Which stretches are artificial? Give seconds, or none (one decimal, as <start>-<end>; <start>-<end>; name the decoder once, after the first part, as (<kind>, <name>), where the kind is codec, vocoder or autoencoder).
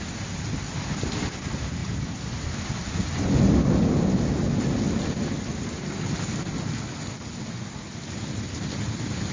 none